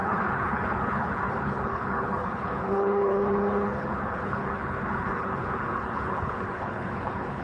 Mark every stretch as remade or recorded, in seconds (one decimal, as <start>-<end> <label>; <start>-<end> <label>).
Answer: 0.0-7.4 remade